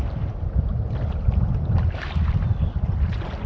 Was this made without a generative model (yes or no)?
yes